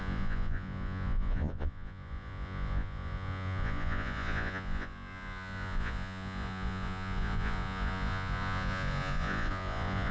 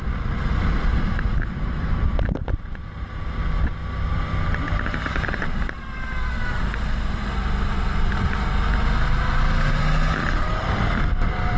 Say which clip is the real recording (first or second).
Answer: second